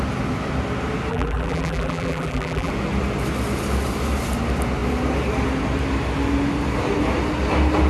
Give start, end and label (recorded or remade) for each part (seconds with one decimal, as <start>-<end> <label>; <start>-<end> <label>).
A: 0.0-1.1 recorded; 1.1-2.7 remade; 2.7-7.9 recorded